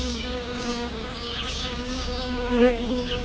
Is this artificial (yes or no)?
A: yes